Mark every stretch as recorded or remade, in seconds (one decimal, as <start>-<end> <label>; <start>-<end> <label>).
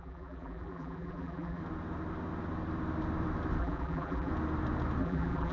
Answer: 0.0-1.6 remade; 1.6-3.6 recorded; 3.6-4.3 remade; 4.3-5.0 recorded; 5.0-5.5 remade